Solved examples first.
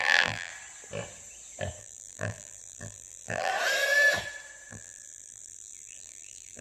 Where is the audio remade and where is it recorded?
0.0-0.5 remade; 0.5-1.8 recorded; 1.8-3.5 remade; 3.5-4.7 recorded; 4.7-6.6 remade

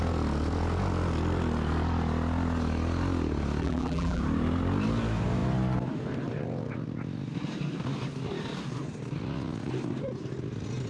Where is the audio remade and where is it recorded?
0.0-3.6 recorded; 3.6-4.2 remade; 4.2-10.9 recorded

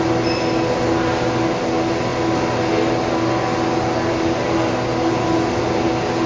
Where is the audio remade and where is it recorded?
0.0-6.3 recorded

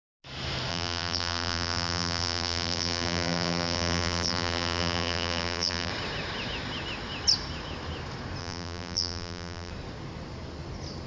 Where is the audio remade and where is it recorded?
0.0-0.7 recorded; 0.7-5.9 remade; 5.9-8.4 recorded; 8.4-9.7 remade; 9.7-11.1 recorded